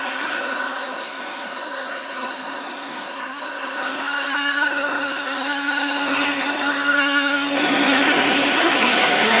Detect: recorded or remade remade